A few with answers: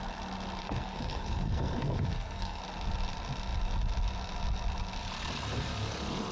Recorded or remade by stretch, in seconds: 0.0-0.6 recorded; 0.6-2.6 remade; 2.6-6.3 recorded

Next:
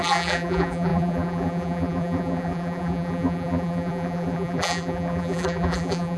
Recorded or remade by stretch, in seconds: 0.0-6.2 remade

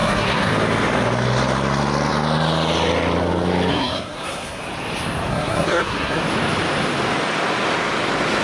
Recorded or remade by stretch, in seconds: 0.0-0.5 remade; 0.5-3.7 recorded; 3.7-4.6 remade; 4.6-5.3 recorded; 5.3-6.2 remade; 6.2-8.4 recorded

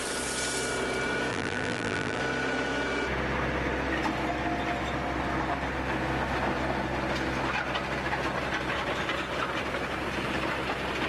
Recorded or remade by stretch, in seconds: 0.0-1.3 recorded; 1.3-2.2 remade; 2.2-11.1 recorded

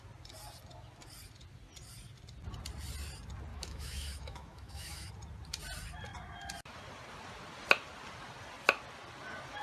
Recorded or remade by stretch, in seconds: 0.0-3.5 recorded; 3.5-5.1 remade; 5.1-9.6 recorded

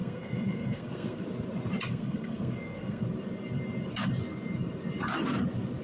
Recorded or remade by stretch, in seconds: 0.0-1.2 remade; 1.2-1.9 recorded; 1.9-3.0 remade; 3.0-5.8 recorded